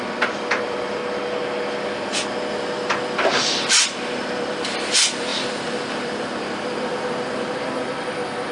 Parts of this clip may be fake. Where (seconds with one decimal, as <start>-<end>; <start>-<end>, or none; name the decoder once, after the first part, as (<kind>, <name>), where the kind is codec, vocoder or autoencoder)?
0.0-1.0 (vocoder, BigVGAN v2); 2.5-8.5